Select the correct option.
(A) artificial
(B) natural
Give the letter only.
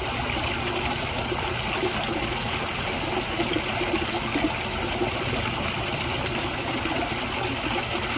B